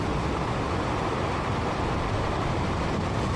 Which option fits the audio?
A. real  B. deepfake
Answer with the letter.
A